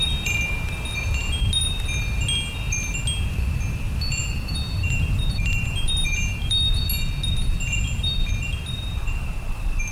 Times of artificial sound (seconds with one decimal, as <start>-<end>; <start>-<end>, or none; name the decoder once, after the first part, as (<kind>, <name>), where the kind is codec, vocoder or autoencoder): 4.2-6.8 (vocoder, BigVGAN v2); 9.0-9.9